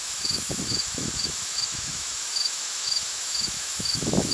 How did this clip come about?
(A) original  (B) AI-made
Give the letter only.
B